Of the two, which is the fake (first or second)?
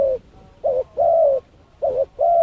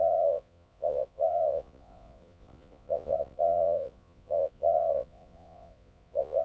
second